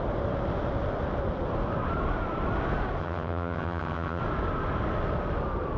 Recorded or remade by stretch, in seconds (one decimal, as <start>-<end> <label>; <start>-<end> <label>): 0.0-3.0 recorded; 3.0-4.2 remade; 4.2-5.8 recorded